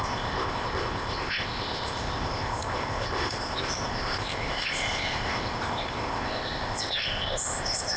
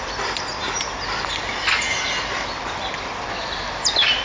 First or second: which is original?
second